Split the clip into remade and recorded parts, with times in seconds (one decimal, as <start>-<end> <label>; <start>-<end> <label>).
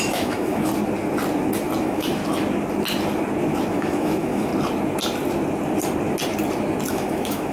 0.0-0.7 remade; 0.7-1.8 recorded; 1.8-2.2 remade; 2.2-3.7 recorded; 3.7-4.5 remade; 4.5-6.9 recorded; 6.9-7.5 remade